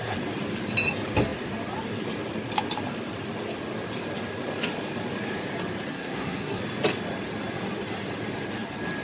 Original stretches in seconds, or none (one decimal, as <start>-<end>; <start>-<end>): 0.0-5.9; 6.6-9.0